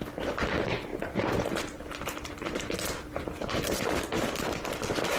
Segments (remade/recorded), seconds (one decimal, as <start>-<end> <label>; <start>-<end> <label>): 0.0-0.9 recorded; 0.9-4.0 remade; 4.0-5.2 recorded